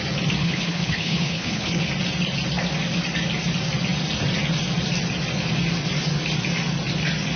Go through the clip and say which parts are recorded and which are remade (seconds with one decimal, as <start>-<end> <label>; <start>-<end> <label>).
0.0-0.4 recorded; 0.4-1.9 remade; 1.9-7.4 recorded